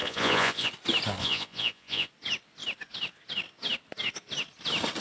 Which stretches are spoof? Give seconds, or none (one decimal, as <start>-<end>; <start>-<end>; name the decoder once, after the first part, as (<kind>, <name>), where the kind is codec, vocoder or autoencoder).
0.0-0.7 (vocoder, Vocos); 1.2-2.1